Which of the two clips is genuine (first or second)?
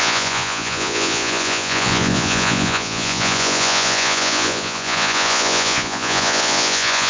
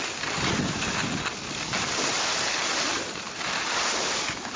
second